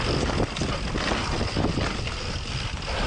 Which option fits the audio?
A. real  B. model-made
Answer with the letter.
A